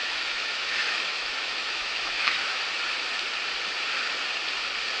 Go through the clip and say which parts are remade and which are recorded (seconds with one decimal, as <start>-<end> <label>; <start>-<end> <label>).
0.0-2.6 remade; 2.6-5.0 recorded